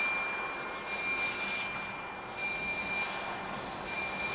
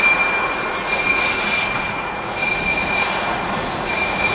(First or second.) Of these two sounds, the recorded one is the first